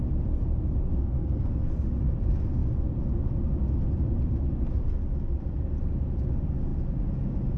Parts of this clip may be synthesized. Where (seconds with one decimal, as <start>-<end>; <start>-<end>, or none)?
0.9-1.6